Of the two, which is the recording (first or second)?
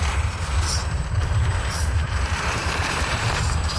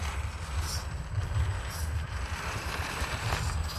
second